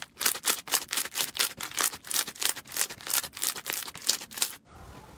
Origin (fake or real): real